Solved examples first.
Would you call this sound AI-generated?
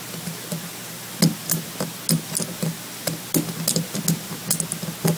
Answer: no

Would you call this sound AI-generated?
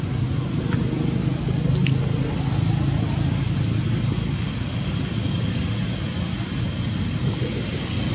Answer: no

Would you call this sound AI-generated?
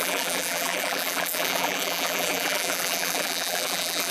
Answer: yes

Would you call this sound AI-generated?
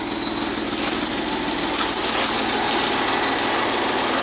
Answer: no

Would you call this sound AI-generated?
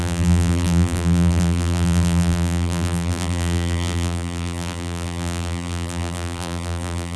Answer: yes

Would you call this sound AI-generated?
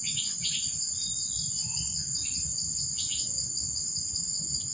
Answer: yes